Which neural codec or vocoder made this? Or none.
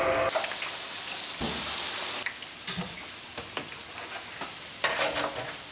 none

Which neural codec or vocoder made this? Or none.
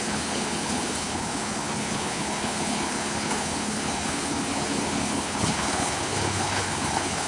codec, HILCodec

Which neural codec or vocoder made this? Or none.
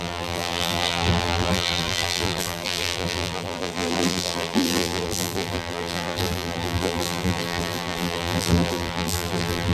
vocoder, BigVGAN v2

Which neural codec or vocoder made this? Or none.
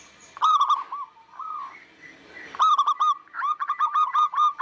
none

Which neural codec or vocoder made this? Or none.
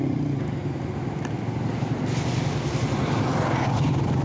none